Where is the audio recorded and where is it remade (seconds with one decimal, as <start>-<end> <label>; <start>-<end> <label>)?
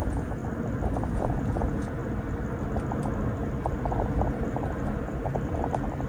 0.0-0.4 remade; 0.4-1.1 recorded; 1.1-2.0 remade; 2.0-6.1 recorded